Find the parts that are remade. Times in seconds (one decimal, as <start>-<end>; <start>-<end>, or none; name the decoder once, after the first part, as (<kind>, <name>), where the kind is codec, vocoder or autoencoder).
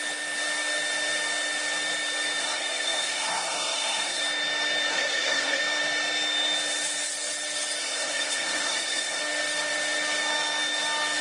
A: 2.4-4.2 (codec, SNAC); 4.9-5.6; 7.8-9.2